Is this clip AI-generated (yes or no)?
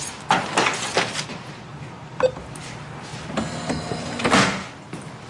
no